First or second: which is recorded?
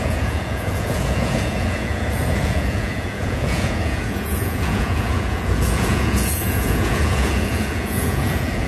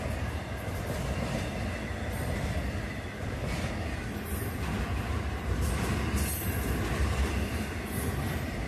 second